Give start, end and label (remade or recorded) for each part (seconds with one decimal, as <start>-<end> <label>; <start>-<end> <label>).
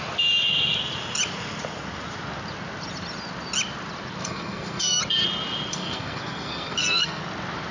0.0-4.2 recorded; 4.2-5.0 remade; 5.0-5.7 recorded; 5.7-7.2 remade; 7.2-7.7 recorded